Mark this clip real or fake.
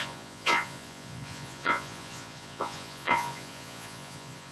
fake